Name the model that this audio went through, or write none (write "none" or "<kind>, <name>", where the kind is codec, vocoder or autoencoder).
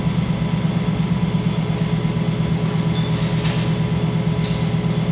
none